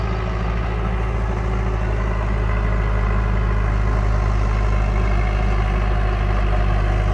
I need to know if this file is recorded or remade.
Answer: recorded